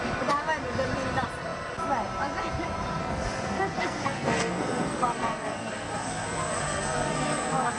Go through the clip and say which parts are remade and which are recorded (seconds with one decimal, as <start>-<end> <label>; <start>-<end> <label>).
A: 0.0-3.0 recorded; 3.0-7.8 remade